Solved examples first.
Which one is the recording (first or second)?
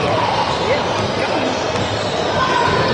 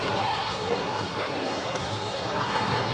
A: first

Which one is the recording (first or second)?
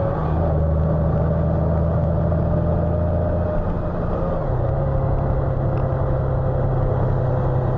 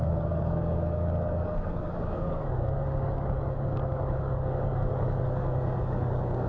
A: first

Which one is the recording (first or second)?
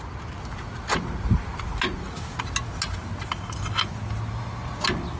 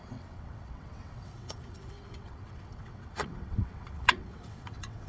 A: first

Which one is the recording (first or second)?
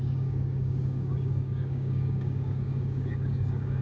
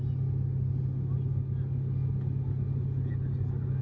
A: second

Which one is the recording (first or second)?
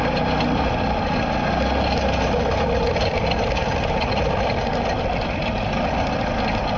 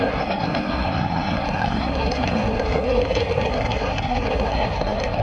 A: first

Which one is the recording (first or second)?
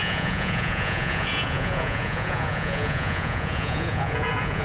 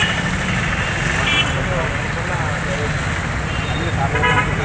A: second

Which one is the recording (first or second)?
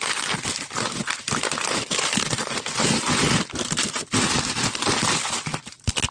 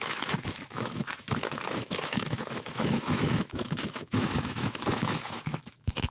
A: first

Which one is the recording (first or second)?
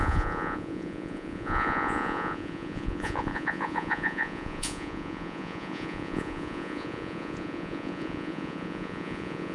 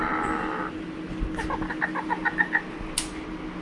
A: second